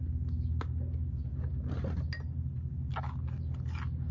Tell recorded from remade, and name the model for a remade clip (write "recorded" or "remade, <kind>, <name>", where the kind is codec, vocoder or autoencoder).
recorded